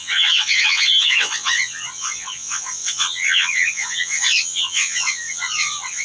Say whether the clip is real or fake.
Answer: fake